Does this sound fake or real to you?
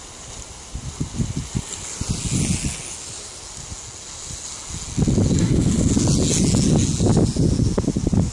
real